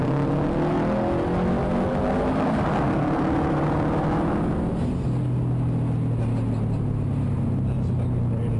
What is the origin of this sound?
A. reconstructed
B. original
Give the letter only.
B